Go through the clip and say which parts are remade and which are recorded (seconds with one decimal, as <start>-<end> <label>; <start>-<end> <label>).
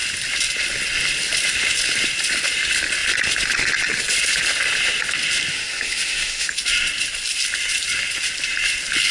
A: 0.0-5.5 recorded; 5.5-6.5 remade; 6.5-9.1 recorded